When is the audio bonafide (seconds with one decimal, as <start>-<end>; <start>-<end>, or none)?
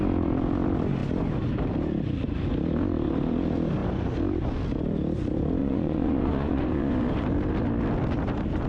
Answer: 0.0-5.6; 6.9-8.7